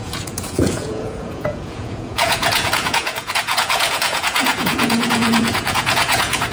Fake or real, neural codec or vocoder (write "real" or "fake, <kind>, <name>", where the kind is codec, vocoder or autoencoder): fake, vocoder, Vocos